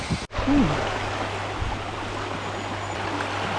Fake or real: real